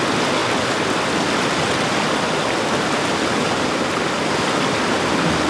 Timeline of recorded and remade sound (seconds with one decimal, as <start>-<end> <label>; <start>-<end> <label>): 0.0-5.5 recorded